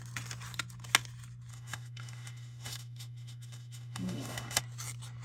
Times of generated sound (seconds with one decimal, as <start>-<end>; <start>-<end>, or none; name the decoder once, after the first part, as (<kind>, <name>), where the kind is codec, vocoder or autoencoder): 1.5-4.6 (autoencoder, DAC-VAE)